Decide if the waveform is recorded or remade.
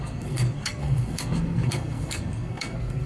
remade